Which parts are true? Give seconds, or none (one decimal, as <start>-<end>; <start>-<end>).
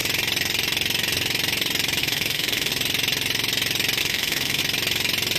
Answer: 0.0-2.0; 2.7-4.0; 4.6-5.4